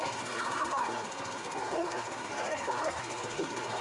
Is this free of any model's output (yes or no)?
no